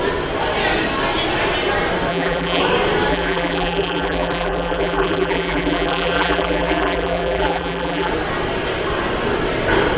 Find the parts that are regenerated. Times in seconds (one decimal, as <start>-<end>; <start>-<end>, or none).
2.1-2.6; 3.1-8.1